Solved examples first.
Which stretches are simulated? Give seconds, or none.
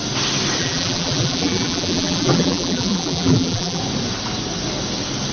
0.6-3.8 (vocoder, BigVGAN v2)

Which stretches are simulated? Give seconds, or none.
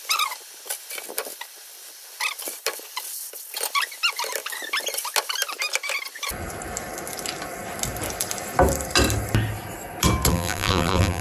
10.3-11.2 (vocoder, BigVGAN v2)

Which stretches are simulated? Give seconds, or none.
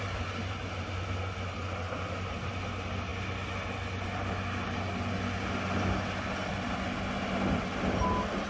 none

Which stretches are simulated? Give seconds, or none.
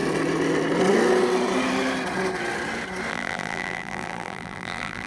3.1-5.1 (vocoder, BigVGAN v2)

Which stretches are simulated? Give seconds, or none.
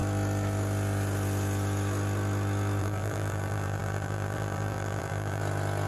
2.8-5.4 (vocoder, BigVGAN v2)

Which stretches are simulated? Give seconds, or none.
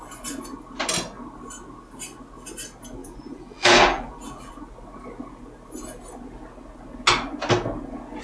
3.0-4.5 (vocoder, BigVGAN v2)